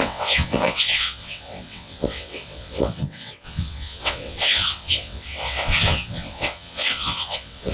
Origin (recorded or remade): remade